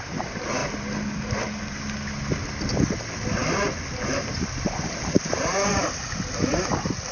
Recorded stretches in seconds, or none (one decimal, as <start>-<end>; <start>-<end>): 0.0-7.1